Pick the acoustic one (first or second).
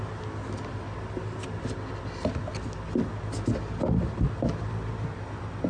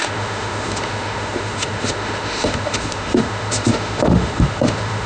first